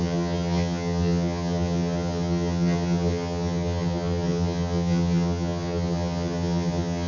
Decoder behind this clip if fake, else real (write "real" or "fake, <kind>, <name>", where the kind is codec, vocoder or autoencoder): fake, vocoder, HiFi-GAN